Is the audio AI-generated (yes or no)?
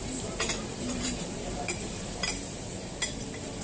yes